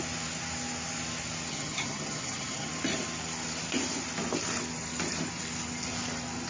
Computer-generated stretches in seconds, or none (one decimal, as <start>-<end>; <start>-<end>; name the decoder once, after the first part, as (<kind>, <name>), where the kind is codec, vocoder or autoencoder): 1.5-2.7 (vocoder, HiFi-GAN)